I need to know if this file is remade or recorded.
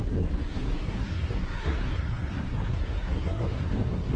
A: remade